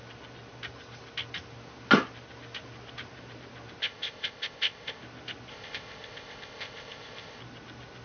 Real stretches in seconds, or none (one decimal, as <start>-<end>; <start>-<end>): 0.0-3.8; 5.0-5.5; 7.4-8.0